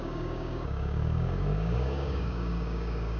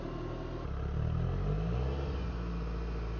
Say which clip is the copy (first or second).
first